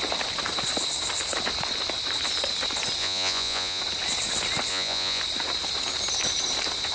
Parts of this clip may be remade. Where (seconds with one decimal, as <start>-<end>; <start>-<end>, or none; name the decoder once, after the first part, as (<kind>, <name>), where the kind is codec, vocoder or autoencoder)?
3.0-3.8 (vocoder, Vocos); 4.7-5.2